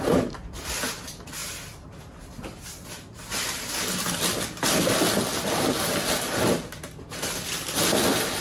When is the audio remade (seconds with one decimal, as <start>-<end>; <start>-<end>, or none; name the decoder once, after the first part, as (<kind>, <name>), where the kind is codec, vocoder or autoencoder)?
none